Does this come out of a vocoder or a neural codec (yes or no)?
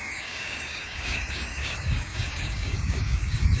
yes